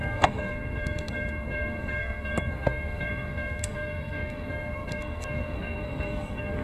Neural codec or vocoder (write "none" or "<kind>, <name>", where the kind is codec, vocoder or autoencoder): codec, SNAC